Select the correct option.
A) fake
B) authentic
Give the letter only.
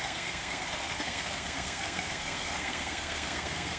A